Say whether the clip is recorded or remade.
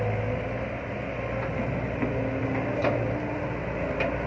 recorded